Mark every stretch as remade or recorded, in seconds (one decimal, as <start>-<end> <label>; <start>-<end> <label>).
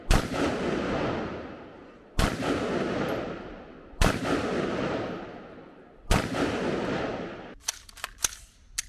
0.0-8.9 recorded